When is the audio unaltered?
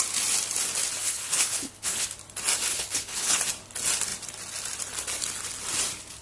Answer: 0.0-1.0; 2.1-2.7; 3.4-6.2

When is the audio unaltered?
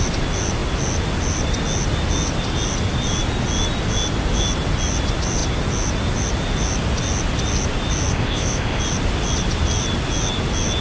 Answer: 0.0-8.1; 8.8-10.8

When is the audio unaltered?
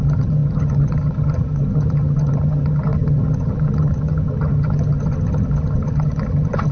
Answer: none